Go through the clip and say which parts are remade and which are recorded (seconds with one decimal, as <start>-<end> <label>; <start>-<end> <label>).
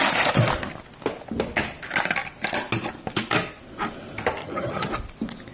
0.0-4.4 recorded; 4.4-4.9 remade; 4.9-5.5 recorded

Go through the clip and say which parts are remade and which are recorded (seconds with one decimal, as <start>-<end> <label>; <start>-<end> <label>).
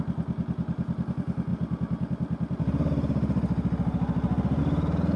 0.0-5.2 recorded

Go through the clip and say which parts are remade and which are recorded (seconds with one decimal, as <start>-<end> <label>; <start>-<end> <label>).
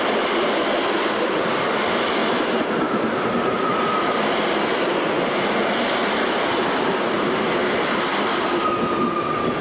0.0-7.6 recorded; 7.6-8.6 remade; 8.6-9.6 recorded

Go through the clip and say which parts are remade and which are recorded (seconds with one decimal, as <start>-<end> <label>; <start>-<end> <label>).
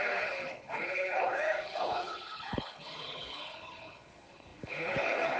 0.0-5.4 remade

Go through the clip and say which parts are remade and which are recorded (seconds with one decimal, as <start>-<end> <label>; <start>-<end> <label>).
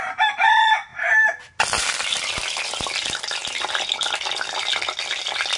0.0-5.6 recorded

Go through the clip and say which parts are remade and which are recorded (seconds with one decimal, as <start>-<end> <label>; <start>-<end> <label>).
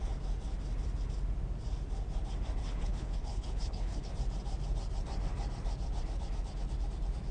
0.0-2.6 recorded; 2.6-4.1 remade; 4.1-7.3 recorded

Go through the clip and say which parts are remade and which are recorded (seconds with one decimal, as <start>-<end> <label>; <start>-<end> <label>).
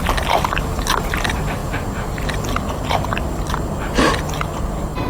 0.0-5.1 recorded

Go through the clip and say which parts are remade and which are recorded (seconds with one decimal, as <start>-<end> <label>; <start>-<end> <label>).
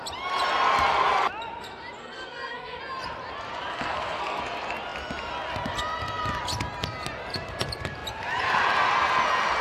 0.0-2.0 recorded; 2.0-2.8 remade; 2.8-3.7 recorded; 3.7-4.4 remade; 4.4-9.6 recorded